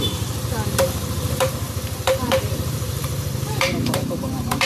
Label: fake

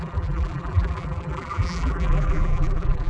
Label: fake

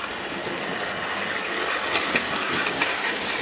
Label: real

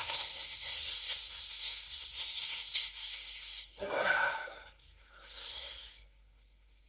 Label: fake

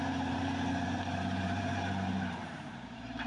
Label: fake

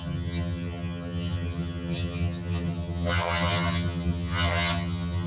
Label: fake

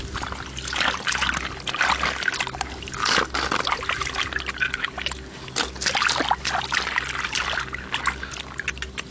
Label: real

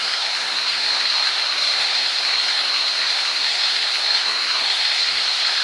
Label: fake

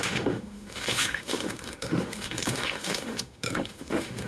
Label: fake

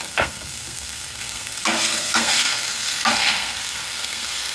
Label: fake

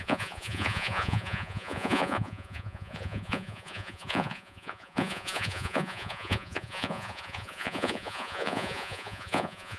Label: fake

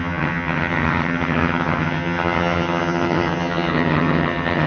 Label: fake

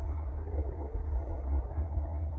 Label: fake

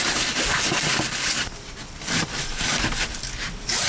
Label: fake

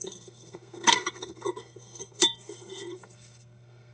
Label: fake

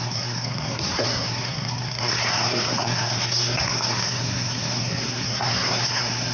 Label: fake